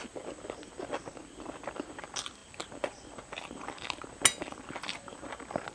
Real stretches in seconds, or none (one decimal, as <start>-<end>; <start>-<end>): 0.0-5.7